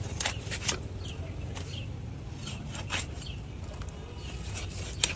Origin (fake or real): real